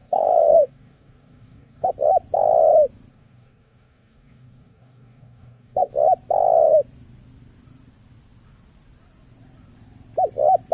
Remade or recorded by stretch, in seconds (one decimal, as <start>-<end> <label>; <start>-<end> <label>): 0.0-1.9 remade; 1.9-3.1 recorded; 3.1-5.9 remade; 5.9-10.7 recorded